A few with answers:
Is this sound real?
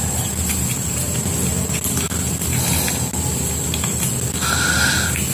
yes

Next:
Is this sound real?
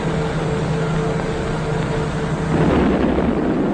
yes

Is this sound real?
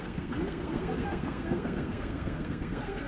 no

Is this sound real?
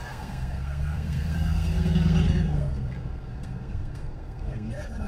no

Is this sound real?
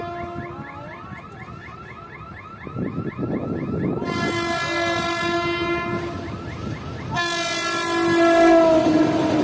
yes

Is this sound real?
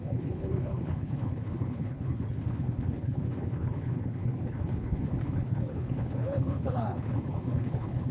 no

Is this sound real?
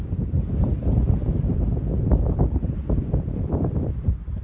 yes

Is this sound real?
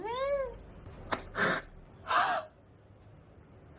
yes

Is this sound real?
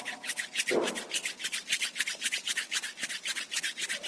no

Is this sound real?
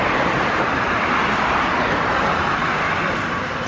no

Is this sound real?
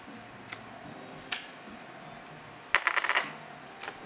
yes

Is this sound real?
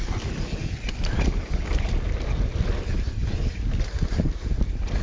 yes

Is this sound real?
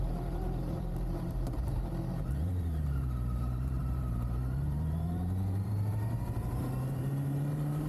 no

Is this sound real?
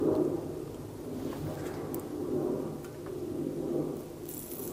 yes